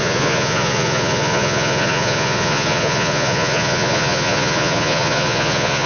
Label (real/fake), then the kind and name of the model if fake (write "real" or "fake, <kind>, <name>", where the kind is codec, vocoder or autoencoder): fake, vocoder, Vocos